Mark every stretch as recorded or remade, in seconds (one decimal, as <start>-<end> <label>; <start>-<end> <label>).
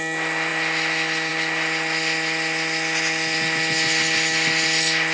0.0-5.1 recorded